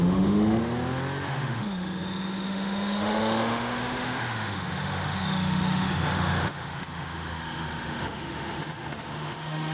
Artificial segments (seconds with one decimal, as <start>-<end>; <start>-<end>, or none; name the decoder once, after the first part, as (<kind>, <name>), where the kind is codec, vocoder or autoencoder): 0.0-0.6 (autoencoder, DAC-VAE); 1.3-9.7